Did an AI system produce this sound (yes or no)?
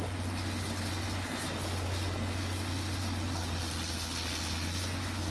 no